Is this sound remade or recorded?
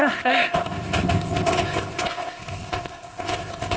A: remade